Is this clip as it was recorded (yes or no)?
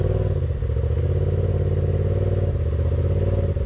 yes